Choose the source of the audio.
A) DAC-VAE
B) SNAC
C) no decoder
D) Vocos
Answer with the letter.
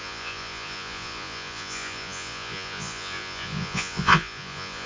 D